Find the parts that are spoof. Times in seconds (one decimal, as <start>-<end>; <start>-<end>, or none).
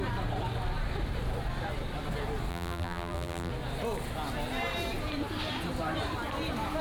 2.5-3.5